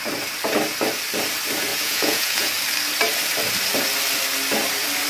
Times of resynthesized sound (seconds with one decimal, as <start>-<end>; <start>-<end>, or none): 1.7-2.5